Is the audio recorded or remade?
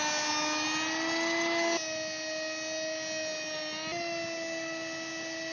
recorded